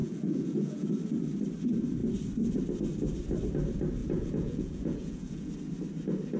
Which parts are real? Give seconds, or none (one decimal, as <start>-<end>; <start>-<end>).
0.9-4.0; 5.5-6.4